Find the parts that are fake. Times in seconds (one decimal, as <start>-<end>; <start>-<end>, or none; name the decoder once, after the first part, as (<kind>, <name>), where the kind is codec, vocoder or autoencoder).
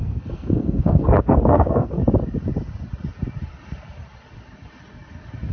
0.0-2.0 (codec, SNAC)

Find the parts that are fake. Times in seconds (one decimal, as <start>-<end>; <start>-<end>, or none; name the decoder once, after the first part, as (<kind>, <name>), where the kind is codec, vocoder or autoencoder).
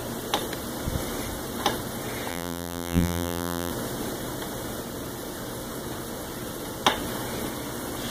2.3-3.7 (vocoder, BigVGAN v2)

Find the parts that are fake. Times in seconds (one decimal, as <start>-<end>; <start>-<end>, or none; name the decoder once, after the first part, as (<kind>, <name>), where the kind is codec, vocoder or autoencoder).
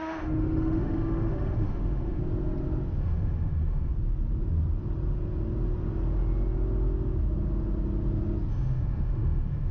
0.0-2.2 (autoencoder, DAC-VAE); 3.0-3.9; 8.5-9.7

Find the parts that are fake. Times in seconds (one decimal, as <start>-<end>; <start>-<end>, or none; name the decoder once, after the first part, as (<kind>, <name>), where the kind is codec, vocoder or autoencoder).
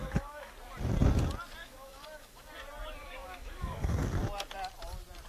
0.0-0.5 (codec, DAC); 1.6-2.5; 3.0-3.9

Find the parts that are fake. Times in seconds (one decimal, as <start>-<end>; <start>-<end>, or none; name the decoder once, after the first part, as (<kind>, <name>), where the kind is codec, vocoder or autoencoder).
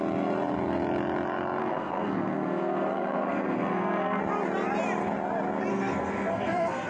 1.6-4.2 (codec, SNAC); 5.7-6.9